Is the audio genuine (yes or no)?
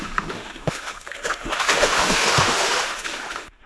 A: no